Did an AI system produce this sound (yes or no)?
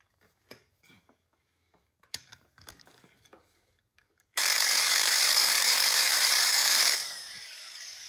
yes